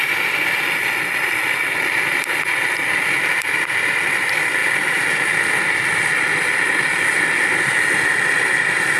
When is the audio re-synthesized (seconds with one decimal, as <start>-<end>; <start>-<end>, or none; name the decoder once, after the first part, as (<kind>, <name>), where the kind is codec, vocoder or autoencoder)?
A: none